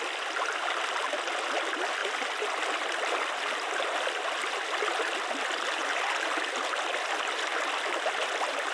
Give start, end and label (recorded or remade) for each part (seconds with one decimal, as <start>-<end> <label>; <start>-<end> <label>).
0.0-2.0 recorded; 2.0-5.0 remade; 5.0-8.7 recorded